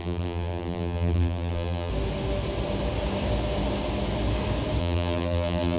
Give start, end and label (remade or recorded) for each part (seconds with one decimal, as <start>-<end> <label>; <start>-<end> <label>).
0.0-1.9 remade; 1.9-4.8 recorded; 4.8-5.8 remade

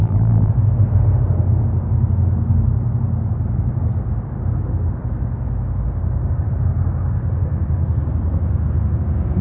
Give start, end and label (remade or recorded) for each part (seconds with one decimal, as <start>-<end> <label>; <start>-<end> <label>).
0.0-0.5 remade; 0.5-9.4 recorded

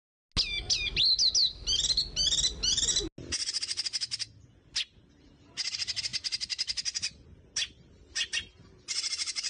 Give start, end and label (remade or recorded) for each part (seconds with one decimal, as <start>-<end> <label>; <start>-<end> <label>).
0.0-9.5 recorded

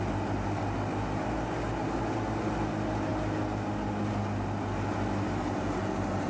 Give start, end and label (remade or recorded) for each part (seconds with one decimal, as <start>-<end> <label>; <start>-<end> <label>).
0.0-6.3 recorded

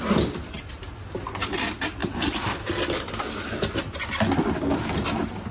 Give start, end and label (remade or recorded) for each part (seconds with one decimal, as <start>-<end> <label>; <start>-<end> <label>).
0.0-5.5 recorded

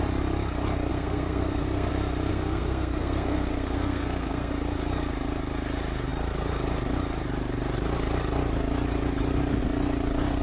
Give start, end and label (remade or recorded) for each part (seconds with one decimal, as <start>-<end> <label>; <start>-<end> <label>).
0.0-0.9 recorded; 0.9-1.9 remade; 1.9-2.3 recorded; 2.3-4.5 remade; 4.5-10.4 recorded

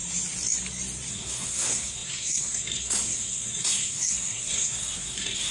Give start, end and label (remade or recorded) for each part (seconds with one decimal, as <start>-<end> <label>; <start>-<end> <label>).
0.0-1.1 recorded; 1.1-5.5 remade